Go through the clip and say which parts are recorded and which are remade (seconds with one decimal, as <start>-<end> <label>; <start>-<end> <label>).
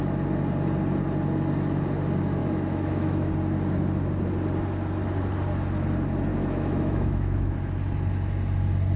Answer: 0.0-2.4 recorded; 2.4-3.3 remade; 3.3-6.3 recorded; 6.3-7.5 remade; 7.5-9.0 recorded